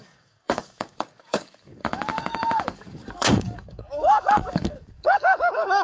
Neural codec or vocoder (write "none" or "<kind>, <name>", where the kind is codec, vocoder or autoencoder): codec, DAC